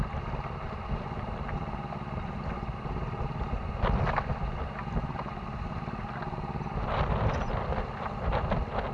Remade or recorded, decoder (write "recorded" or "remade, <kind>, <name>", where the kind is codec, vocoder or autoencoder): recorded